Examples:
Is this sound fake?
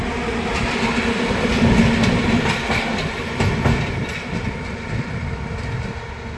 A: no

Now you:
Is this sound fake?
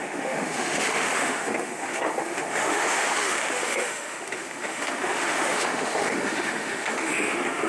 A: yes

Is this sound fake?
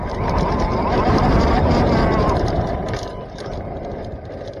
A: yes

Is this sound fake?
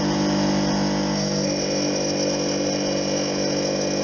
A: no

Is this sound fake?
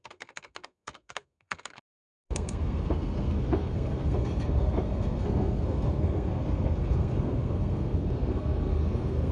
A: yes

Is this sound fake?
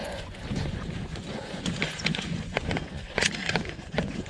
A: yes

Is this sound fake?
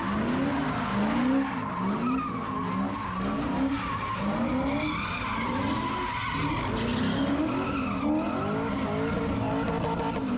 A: no